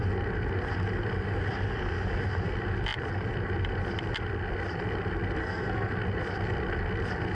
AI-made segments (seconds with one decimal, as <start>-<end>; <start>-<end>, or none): 5.4-5.9